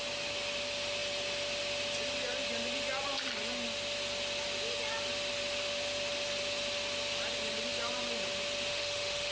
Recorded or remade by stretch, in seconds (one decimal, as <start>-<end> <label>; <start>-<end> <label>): 0.0-8.7 recorded; 8.7-9.3 remade